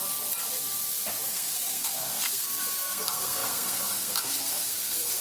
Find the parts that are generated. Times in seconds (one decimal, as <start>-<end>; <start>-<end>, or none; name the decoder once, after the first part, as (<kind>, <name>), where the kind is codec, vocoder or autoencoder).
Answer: 1.3-5.2 (codec, SNAC)